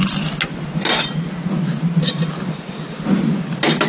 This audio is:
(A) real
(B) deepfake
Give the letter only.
A